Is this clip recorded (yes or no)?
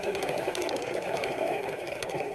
no